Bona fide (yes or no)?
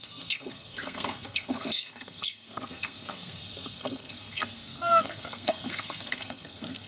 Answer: no